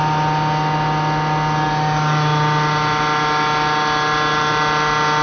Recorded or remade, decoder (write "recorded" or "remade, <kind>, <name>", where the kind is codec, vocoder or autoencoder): recorded